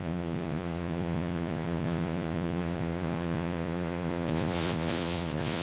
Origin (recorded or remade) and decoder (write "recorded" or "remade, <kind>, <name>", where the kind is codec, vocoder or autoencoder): remade, vocoder, Vocos